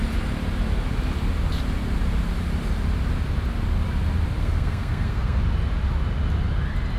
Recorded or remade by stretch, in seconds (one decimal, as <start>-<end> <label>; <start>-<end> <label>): 0.0-4.4 recorded; 4.4-5.4 remade; 5.4-7.0 recorded